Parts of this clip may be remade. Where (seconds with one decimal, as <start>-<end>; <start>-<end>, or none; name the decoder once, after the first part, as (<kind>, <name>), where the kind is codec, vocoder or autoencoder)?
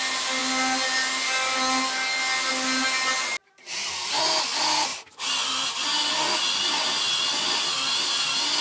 3.4-4.2 (vocoder, BigVGAN v2)